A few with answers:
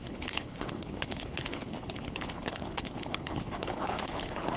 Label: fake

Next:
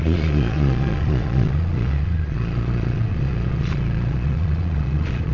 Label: fake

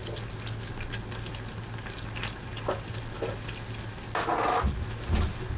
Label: real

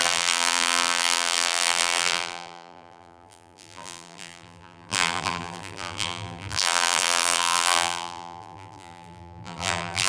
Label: fake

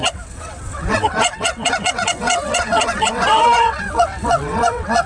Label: fake